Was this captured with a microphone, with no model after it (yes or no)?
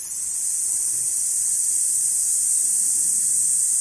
yes